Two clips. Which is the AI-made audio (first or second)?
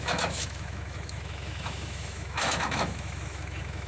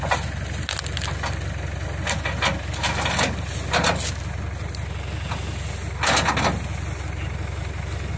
first